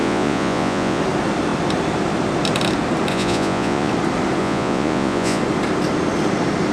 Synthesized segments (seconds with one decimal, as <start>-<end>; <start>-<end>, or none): 0.0-1.0; 3.1-3.9; 4.4-5.4